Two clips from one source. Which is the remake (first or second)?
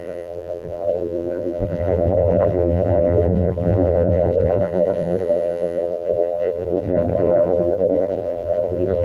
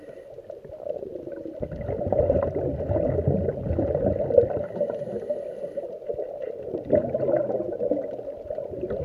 first